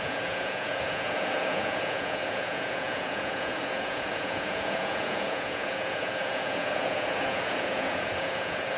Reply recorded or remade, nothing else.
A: remade